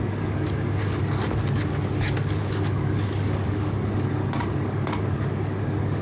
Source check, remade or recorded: remade